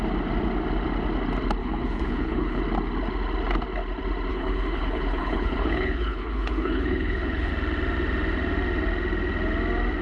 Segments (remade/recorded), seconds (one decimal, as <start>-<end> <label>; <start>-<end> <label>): 0.0-1.6 recorded; 1.6-2.6 remade; 2.6-4.3 recorded; 4.3-7.5 remade; 7.5-10.0 recorded